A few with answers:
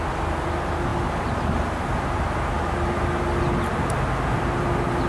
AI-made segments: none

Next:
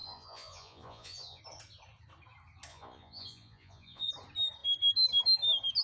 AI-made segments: 0.0-1.4 (vocoder, Vocos); 2.7-4.1